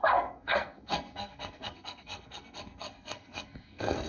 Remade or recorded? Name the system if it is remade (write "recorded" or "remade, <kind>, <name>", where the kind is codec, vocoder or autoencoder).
remade, codec, SNAC